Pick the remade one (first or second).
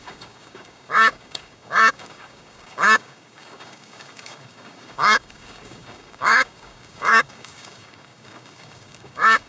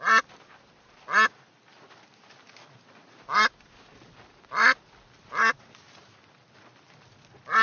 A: first